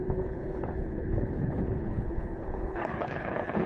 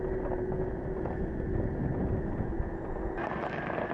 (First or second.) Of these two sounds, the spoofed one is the first